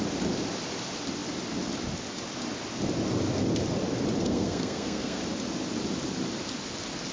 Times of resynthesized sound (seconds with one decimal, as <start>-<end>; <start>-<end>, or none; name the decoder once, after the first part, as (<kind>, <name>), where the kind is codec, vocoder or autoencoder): 4.2-5.2 (codec, SNAC)

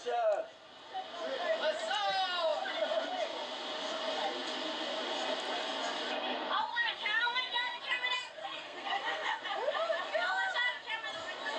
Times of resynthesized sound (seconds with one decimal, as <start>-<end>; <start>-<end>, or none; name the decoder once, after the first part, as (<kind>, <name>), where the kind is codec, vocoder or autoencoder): 6.7-7.8 (codec, SNAC); 8.4-9.4

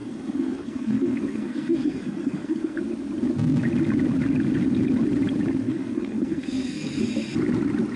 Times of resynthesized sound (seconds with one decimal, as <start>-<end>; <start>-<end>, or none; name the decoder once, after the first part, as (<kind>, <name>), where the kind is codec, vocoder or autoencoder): 0.0-2.8 (codec, SNAC); 5.6-7.0

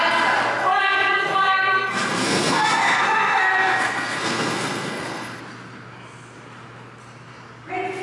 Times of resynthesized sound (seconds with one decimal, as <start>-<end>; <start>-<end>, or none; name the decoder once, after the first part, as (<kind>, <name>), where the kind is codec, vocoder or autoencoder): 0.6-5.4 (codec, SNAC)

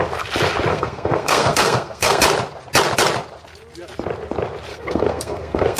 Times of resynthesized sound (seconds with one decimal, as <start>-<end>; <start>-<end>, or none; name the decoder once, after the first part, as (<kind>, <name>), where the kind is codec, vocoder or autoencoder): 0.7-2.2 (codec, SNAC); 4.7-5.8

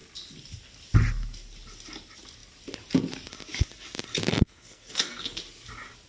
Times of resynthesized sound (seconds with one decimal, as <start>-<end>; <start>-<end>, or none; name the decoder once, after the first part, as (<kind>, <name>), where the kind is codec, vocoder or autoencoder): 4.3-5.4 (codec, SNAC)

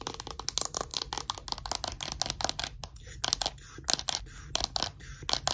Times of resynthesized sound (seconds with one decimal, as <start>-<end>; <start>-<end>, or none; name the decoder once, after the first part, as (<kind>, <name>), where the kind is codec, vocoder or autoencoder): none